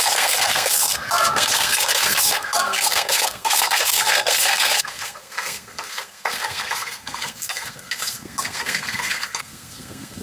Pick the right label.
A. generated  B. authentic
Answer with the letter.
A